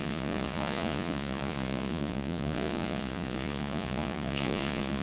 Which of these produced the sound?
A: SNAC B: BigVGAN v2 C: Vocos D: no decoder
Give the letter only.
C